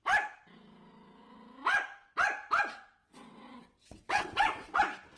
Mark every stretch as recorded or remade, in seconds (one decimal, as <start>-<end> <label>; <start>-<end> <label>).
0.0-3.0 recorded; 3.0-4.8 remade; 4.8-5.2 recorded